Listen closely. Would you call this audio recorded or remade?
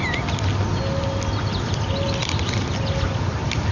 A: recorded